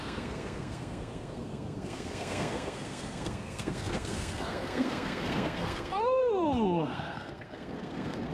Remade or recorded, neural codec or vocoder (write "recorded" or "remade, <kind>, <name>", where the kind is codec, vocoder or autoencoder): remade, codec, SNAC